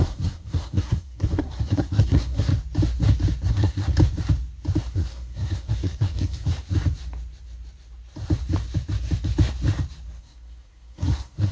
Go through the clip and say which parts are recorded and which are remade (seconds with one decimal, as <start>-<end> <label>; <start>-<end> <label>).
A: 0.0-2.5 remade; 2.5-3.5 recorded; 3.5-3.9 remade; 3.9-4.9 recorded; 4.9-6.5 remade; 6.5-10.2 recorded; 10.2-11.5 remade